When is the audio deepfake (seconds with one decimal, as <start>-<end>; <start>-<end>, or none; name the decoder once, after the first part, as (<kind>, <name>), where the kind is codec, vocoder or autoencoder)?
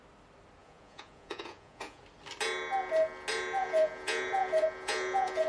0.6-2.0 (vocoder, Vocos); 3.6-5.5